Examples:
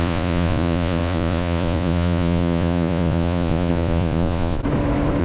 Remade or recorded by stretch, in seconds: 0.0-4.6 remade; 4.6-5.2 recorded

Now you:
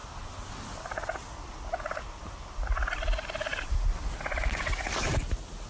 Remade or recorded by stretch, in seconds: 0.0-5.7 recorded